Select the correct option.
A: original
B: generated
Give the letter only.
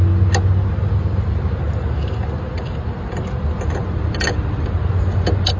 A